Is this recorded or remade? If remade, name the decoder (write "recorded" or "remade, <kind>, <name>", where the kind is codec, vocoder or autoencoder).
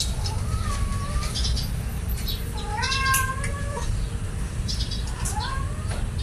remade, vocoder, BigVGAN v2